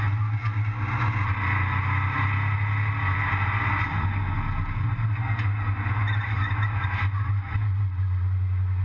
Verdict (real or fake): real